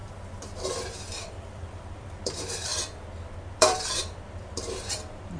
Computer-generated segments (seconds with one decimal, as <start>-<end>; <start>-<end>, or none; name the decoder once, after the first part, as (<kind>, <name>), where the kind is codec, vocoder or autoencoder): 0.9-2.7 (vocoder, BigVGAN v2); 3.5-5.4

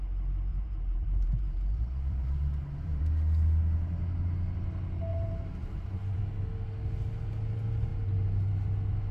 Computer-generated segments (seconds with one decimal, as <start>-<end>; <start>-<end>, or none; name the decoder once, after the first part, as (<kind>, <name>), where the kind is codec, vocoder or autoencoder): 0.5-3.0 (vocoder, BigVGAN v2); 5.1-6.2

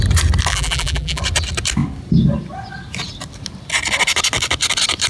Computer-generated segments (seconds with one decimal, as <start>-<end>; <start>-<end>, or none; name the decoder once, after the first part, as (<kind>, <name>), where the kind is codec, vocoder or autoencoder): 0.5-1.2 (vocoder, BigVGAN v2)

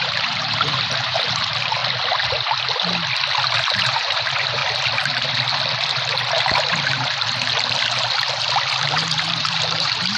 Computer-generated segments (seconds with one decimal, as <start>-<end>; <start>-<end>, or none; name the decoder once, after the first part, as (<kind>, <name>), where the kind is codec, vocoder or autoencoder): 0.0-1.8 (vocoder, BigVGAN v2); 3.8-4.6; 9.3-10.2

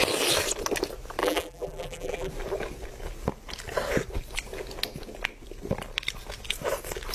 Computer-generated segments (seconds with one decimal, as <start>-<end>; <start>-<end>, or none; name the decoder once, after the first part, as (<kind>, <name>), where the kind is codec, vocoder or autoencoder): 1.2-2.3 (vocoder, BigVGAN v2)

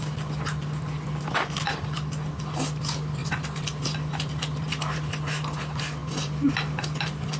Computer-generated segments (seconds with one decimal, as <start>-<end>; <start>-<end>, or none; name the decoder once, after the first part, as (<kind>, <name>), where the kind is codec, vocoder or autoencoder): 6.0-6.5 (vocoder, BigVGAN v2)